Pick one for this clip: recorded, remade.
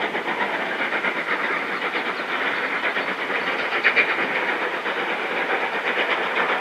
recorded